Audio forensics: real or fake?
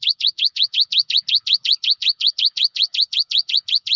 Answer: fake